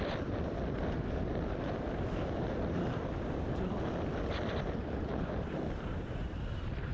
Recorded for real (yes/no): no